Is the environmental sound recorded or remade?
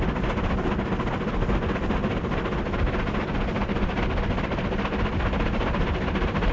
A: recorded